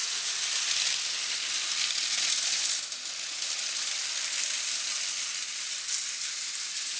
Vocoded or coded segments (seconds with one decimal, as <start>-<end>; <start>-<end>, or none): none